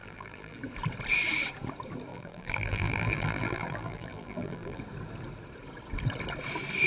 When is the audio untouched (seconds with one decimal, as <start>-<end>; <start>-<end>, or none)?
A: 0.6-2.1; 4.8-6.9